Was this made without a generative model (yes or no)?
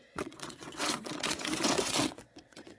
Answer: no